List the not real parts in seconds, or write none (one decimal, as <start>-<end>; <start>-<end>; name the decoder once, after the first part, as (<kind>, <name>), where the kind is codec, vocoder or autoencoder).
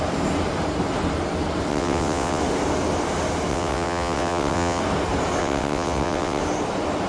1.7-2.4 (vocoder, WaveNeXt); 3.5-4.8; 5.4-6.4